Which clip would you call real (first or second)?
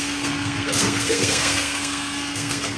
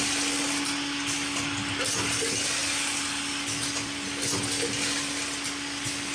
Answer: second